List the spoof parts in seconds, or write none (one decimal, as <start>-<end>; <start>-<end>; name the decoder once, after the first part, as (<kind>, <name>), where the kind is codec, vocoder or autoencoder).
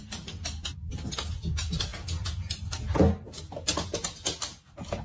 none